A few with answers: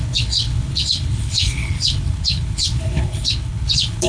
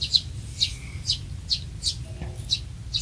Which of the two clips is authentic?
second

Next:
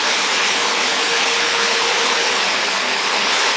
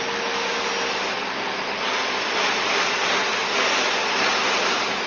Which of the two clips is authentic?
second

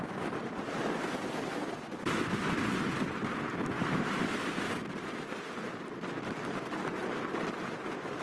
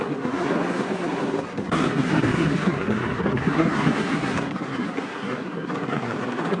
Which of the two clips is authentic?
first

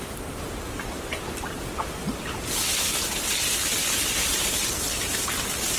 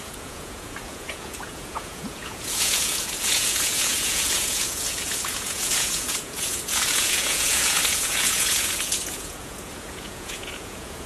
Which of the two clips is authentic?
first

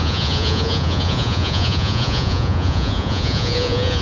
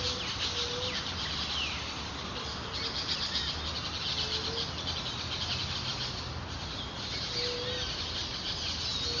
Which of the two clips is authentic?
second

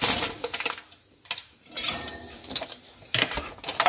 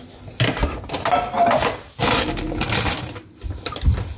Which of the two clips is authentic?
second